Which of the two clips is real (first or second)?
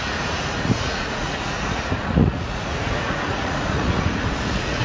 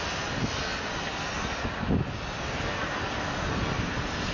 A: second